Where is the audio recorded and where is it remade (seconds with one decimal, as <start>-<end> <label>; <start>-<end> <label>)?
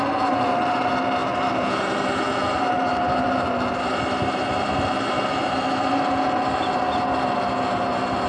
0.0-2.9 recorded; 2.9-6.1 remade; 6.1-8.3 recorded